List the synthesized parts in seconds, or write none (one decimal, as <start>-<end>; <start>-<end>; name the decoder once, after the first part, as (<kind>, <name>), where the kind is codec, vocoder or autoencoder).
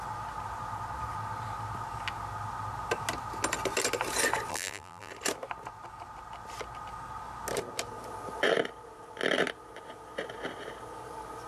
4.5-5.1 (vocoder, BigVGAN v2)